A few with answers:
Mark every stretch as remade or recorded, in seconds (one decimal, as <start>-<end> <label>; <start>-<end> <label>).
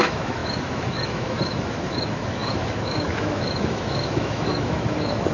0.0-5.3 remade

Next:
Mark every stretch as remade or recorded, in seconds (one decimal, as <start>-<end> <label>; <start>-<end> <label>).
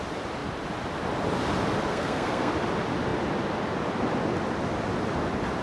0.0-1.9 recorded; 1.9-2.5 remade; 2.5-5.6 recorded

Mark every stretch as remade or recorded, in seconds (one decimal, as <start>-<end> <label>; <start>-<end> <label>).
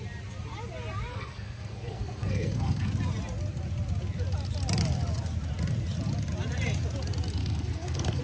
0.0-1.1 recorded; 1.1-2.9 remade; 2.9-7.4 recorded; 7.4-8.2 remade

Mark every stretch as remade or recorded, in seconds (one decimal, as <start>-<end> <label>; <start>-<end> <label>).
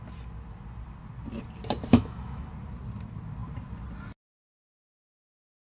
0.0-1.9 recorded; 1.9-2.5 remade; 2.5-5.6 recorded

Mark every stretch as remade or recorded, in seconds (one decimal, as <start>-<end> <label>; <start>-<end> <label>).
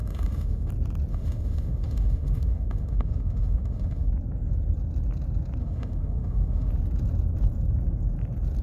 0.0-0.7 remade; 0.7-1.1 recorded; 1.1-4.1 remade; 4.1-5.6 recorded; 5.6-6.7 remade; 6.7-8.6 recorded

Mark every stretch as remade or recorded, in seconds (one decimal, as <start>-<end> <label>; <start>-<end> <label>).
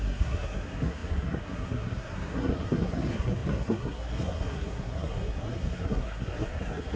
0.0-7.0 remade